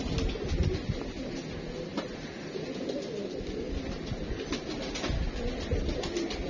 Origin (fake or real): real